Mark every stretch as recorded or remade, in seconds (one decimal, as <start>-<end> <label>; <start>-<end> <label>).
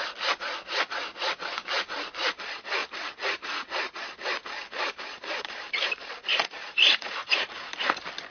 0.0-2.8 recorded; 2.8-4.0 remade; 4.0-6.3 recorded; 6.3-7.7 remade; 7.7-8.3 recorded